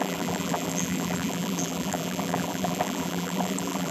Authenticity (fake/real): fake